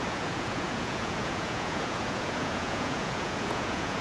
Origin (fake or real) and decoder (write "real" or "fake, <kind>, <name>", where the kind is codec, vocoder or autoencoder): fake, vocoder, Vocos